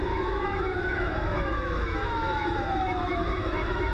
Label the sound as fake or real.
fake